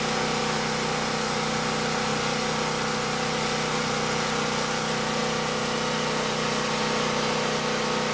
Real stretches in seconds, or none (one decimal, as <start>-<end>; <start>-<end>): 0.0-8.1

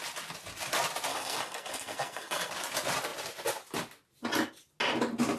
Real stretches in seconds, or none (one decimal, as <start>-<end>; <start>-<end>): 0.0-1.1; 2.5-5.4

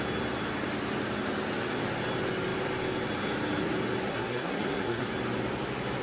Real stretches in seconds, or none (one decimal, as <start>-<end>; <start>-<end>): 0.0-4.1; 5.1-6.0

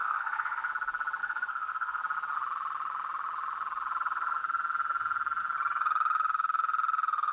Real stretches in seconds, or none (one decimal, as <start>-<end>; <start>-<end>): 0.7-1.2; 2.0-7.3